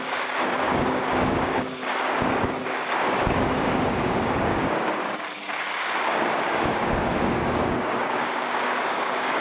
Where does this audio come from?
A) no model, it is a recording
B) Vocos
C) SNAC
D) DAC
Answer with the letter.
D